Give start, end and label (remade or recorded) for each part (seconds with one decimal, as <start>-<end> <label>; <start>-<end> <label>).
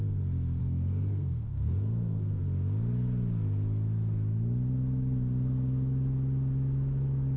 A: 0.0-0.6 recorded; 0.6-2.4 remade; 2.4-7.4 recorded